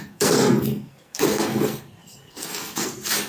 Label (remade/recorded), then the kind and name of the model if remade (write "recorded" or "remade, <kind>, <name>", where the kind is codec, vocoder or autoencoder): remade, codec, SNAC